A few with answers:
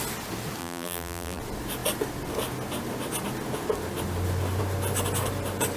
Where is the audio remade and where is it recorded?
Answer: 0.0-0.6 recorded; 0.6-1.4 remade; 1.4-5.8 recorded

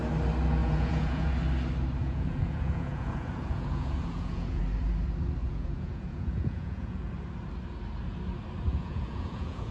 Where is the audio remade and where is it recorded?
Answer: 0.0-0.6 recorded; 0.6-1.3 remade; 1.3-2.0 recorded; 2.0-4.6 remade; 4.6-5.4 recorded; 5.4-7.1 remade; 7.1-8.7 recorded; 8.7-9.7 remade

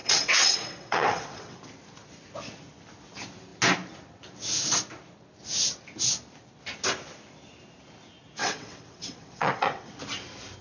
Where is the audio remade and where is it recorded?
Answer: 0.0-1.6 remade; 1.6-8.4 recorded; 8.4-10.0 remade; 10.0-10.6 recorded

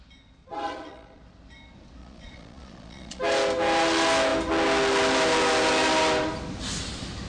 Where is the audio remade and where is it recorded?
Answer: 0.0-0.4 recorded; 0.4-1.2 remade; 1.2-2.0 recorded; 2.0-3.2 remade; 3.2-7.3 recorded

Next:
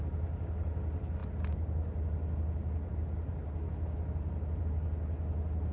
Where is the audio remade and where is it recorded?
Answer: 0.0-5.7 recorded

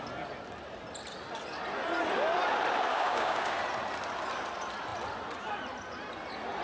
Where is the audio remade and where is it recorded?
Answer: 0.0-2.9 recorded; 2.9-3.6 remade; 3.6-6.6 recorded